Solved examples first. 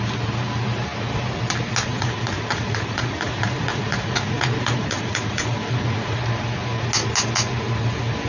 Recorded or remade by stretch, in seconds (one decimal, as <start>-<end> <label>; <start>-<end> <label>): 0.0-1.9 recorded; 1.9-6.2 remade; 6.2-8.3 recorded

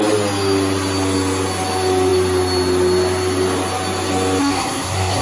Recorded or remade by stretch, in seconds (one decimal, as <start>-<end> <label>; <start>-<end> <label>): 0.0-4.4 recorded; 4.4-5.2 remade

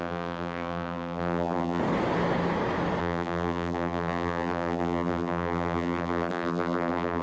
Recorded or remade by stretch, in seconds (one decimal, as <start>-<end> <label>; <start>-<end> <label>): 0.0-1.8 remade; 1.8-3.0 recorded; 3.0-7.2 remade